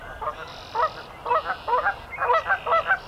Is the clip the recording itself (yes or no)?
yes